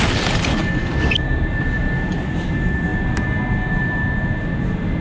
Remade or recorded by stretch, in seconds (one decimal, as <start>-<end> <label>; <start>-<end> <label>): 0.0-5.0 recorded